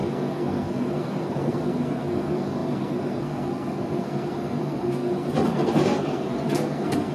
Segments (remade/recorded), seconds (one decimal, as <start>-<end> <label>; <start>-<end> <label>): 0.0-7.1 remade